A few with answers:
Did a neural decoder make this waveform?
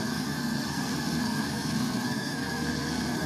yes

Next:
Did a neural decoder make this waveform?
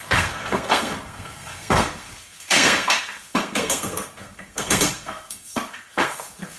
yes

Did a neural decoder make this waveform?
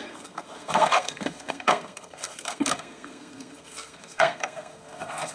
yes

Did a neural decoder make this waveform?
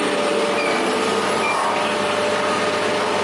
no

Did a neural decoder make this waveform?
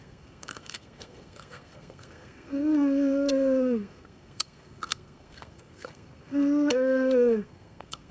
yes